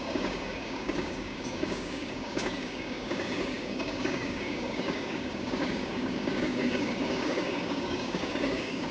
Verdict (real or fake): fake